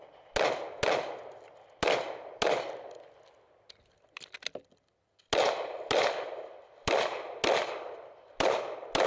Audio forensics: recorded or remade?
recorded